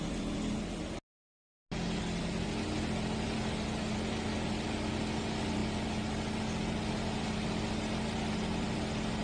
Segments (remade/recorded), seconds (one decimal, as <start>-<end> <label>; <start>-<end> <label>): 0.0-9.2 recorded